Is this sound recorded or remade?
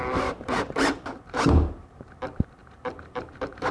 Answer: remade